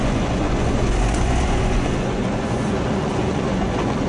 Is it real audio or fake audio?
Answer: fake